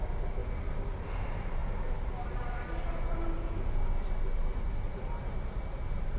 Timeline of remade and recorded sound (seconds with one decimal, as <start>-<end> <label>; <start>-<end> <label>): 0.0-6.2 recorded